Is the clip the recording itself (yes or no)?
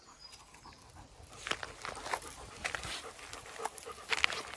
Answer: no